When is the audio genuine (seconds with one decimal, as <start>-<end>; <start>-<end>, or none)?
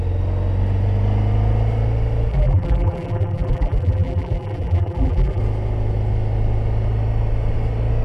0.0-2.3; 5.4-8.0